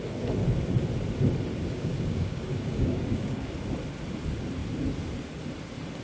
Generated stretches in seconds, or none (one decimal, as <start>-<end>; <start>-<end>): 1.6-3.5